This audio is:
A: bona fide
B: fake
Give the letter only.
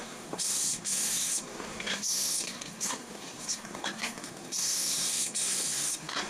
B